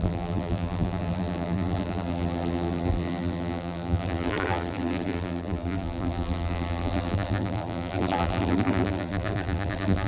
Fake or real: fake